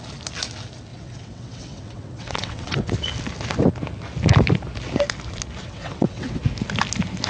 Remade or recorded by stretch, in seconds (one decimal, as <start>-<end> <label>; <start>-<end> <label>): 0.0-0.9 recorded; 0.9-2.9 remade; 2.9-5.6 recorded; 5.6-6.4 remade; 6.4-7.3 recorded